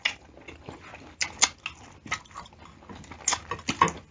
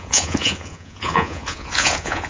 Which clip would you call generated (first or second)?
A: second